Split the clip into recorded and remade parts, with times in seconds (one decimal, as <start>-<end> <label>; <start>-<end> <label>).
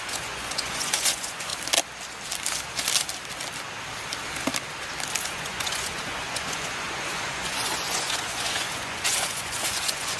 0.0-1.5 remade; 1.5-5.2 recorded; 5.2-10.2 remade